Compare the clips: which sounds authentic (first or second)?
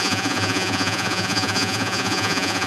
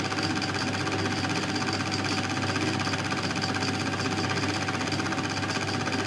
second